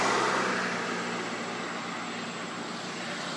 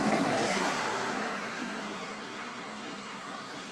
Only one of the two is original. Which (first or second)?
first